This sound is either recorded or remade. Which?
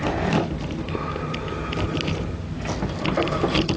recorded